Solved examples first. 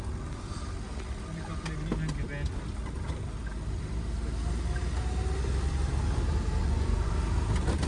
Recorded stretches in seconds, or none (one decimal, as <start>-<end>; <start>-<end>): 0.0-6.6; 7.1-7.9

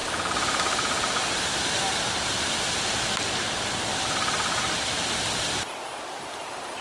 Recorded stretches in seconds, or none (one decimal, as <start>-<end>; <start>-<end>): 0.0-2.9

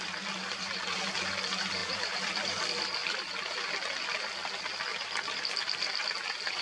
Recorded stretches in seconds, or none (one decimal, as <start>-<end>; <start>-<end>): 0.0-1.8; 2.6-3.0; 3.7-4.9

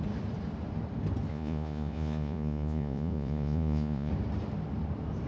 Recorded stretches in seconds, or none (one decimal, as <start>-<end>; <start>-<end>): 0.0-1.3; 4.1-5.3

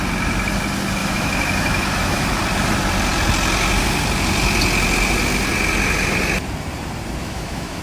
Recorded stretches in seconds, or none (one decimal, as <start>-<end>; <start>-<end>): 0.0-1.0; 2.4-7.2

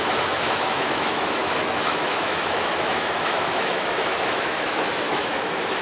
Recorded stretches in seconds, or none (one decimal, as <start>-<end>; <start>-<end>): none

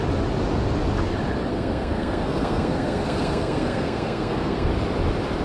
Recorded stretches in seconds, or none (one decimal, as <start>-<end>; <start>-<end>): 0.0-1.5; 4.7-5.4